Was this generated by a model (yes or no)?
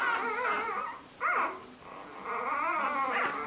no